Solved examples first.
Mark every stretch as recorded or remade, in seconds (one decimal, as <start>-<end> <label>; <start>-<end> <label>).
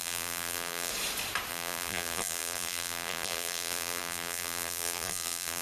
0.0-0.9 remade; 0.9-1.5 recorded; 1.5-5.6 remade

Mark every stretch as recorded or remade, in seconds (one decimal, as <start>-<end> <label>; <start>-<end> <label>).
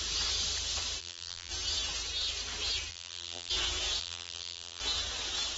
0.0-1.0 recorded; 1.0-1.5 remade; 1.5-2.9 recorded; 2.9-3.5 remade; 3.5-4.0 recorded; 4.0-4.8 remade; 4.8-5.6 recorded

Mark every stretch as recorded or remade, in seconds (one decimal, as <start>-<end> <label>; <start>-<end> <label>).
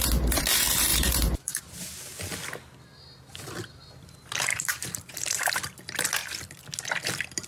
0.0-0.9 recorded; 0.9-1.6 remade; 1.6-4.5 recorded; 4.5-5.5 remade; 5.5-7.5 recorded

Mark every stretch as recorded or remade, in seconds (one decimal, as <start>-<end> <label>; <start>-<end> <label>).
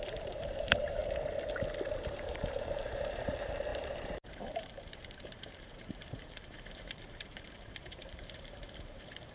0.0-1.0 remade; 1.0-2.0 recorded; 2.0-9.3 remade